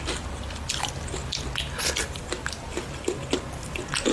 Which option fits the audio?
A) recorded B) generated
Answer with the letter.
A